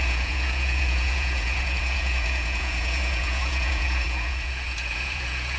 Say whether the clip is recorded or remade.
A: remade